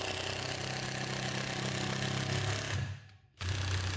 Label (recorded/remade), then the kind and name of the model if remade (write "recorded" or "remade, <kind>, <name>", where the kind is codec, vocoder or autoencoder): recorded